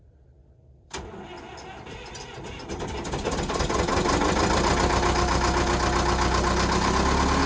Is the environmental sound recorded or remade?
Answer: recorded